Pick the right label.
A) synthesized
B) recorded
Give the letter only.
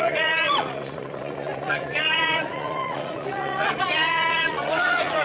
A